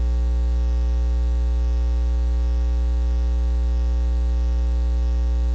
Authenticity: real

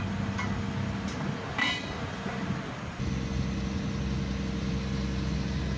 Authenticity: real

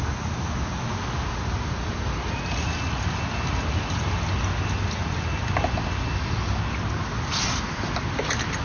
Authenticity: real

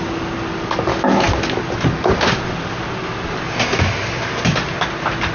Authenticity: real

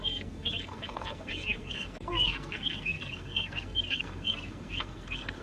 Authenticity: fake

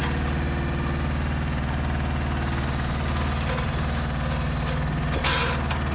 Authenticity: real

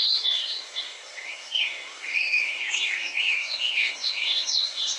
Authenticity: fake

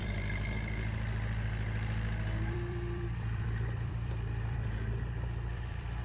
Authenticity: fake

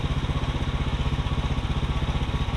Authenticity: real